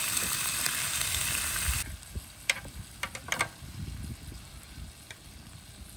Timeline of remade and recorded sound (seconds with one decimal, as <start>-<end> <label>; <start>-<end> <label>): 0.0-6.0 recorded